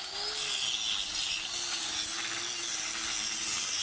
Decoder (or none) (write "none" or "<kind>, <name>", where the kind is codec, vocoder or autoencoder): none